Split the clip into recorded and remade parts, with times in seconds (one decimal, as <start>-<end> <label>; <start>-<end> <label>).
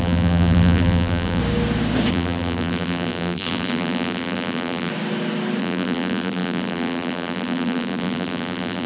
0.0-1.4 remade; 1.4-2.1 recorded; 2.1-4.9 remade; 4.9-5.6 recorded; 5.6-8.9 remade